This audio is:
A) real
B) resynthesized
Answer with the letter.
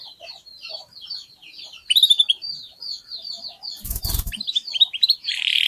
B